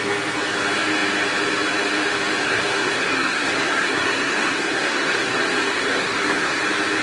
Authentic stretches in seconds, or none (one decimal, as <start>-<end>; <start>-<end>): 0.0-2.4; 6.6-7.0